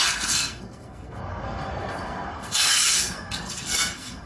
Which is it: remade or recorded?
remade